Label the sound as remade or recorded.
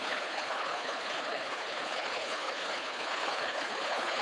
remade